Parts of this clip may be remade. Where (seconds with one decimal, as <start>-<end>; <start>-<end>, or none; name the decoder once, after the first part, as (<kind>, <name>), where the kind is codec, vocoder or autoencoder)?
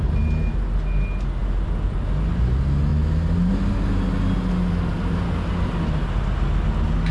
none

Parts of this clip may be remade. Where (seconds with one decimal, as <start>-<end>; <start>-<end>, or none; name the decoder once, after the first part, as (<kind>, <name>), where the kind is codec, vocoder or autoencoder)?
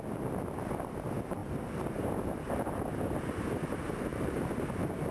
1.4-2.8 (vocoder, BigVGAN v2); 4.1-5.1